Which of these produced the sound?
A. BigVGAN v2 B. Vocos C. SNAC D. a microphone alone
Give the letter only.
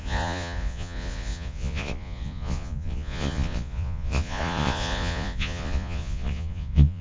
B